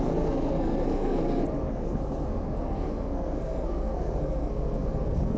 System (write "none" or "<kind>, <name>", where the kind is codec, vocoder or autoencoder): codec, SNAC